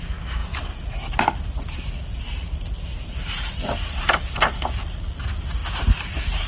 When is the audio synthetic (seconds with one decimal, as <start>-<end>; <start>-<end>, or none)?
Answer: none